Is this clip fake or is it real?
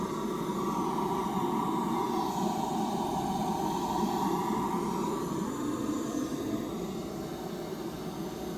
real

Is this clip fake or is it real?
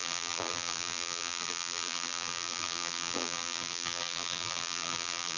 fake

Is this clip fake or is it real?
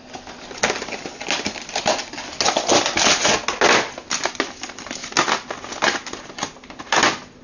real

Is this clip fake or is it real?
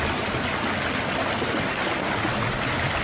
real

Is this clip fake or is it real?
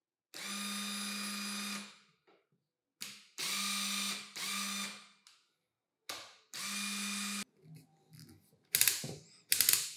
real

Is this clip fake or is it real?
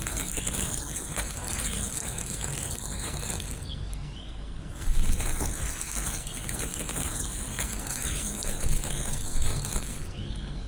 fake